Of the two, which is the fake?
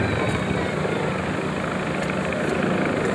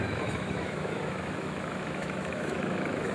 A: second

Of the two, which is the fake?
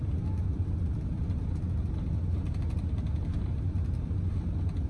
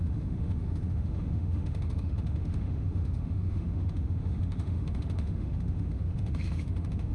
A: second